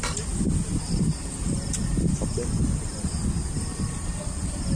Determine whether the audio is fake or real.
real